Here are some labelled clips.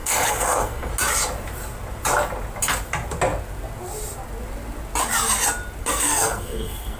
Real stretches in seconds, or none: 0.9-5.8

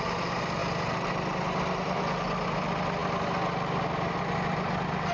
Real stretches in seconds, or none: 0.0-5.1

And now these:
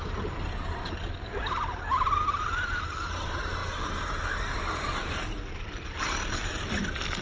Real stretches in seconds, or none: 0.0-7.2

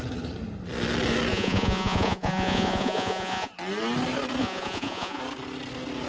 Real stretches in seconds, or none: 0.0-1.3; 3.5-4.4; 5.2-6.1

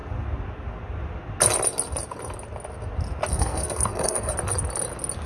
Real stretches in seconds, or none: 0.0-3.3; 4.3-5.3

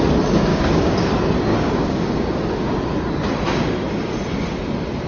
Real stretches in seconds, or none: 0.0-0.5; 1.1-1.5; 2.6-5.1